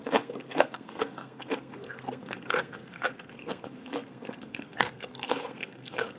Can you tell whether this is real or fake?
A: fake